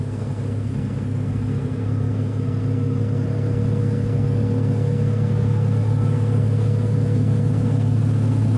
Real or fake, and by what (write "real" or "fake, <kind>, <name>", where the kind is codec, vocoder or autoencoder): fake, codec, SNAC